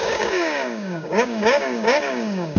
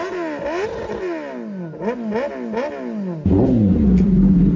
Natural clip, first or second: second